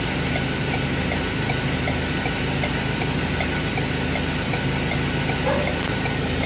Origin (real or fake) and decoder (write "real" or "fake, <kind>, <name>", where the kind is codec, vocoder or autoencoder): real